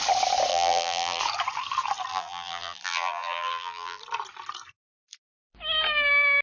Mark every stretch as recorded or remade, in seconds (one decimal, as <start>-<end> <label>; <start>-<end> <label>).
0.0-0.5 recorded; 0.5-1.2 remade; 1.2-2.1 recorded; 2.1-4.0 remade; 4.0-6.4 recorded